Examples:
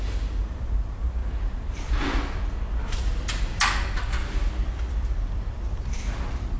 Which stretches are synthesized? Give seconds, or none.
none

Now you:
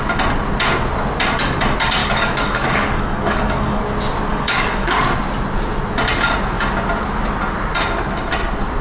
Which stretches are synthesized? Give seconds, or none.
2.0-3.8 (codec, DAC); 4.3-5.0